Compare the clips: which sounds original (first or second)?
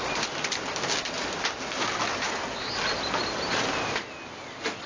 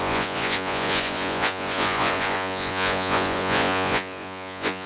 first